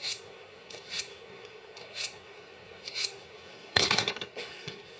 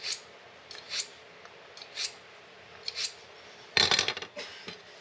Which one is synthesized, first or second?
first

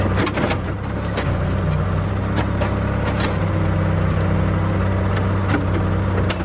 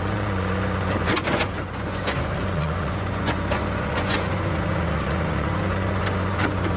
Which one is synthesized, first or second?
second